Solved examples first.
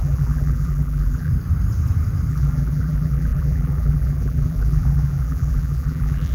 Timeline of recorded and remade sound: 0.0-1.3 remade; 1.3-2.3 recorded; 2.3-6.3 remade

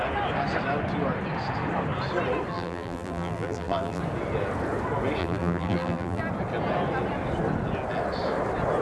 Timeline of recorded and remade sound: 0.0-2.5 recorded; 2.5-4.0 remade; 4.0-5.2 recorded; 5.2-6.2 remade; 6.2-8.8 recorded